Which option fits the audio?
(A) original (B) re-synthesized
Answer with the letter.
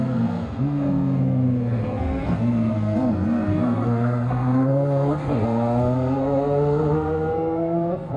B